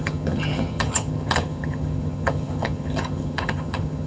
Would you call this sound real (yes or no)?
no